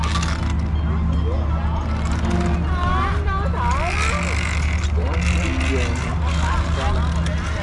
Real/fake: real